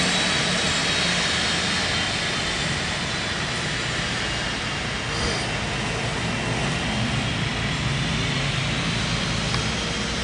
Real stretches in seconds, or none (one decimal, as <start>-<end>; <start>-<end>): 0.0-10.2